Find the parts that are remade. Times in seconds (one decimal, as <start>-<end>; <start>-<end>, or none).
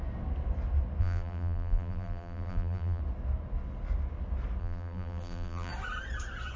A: 1.0-3.0; 4.6-5.7